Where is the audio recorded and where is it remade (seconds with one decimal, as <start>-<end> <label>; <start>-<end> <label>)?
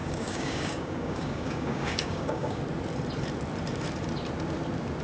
0.0-2.6 remade; 2.6-5.0 recorded